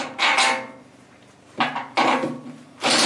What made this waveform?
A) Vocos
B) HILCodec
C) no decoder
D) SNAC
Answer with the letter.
C